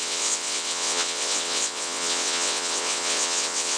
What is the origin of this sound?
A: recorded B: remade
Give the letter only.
B